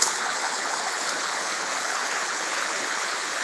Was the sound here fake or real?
fake